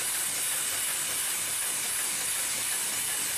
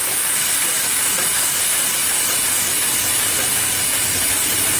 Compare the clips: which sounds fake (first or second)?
first